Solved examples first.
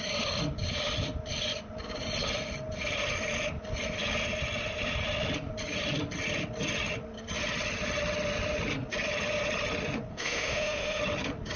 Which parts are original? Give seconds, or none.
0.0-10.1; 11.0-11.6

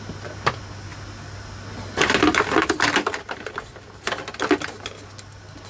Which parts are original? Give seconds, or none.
0.0-5.7

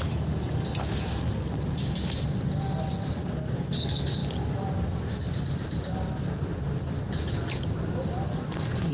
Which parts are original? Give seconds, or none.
0.0-8.9

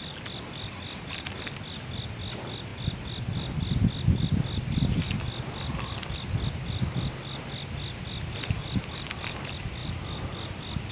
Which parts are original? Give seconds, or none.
0.0-10.9

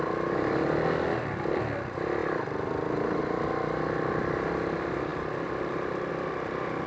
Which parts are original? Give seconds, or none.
0.0-2.2; 3.2-6.9

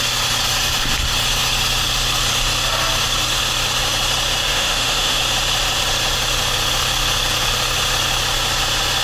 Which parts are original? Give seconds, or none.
0.0-4.5; 5.2-9.0